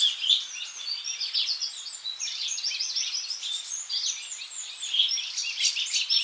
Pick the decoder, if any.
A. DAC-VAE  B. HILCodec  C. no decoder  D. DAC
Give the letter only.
C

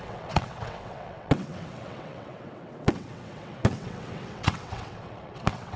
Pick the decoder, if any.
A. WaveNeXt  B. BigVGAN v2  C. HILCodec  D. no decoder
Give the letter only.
A